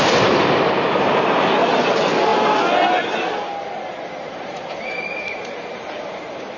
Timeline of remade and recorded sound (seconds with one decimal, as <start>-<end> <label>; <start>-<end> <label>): 0.0-2.3 remade; 2.3-3.9 recorded; 3.9-6.6 remade

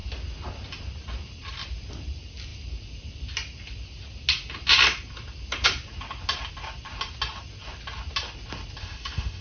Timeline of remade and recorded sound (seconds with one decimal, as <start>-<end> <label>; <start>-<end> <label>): 0.0-8.8 recorded; 8.8-9.4 remade

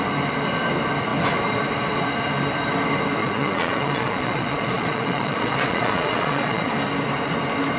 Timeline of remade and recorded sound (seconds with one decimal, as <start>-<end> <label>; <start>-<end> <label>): 0.0-3.2 recorded; 3.2-6.7 remade; 6.7-7.8 recorded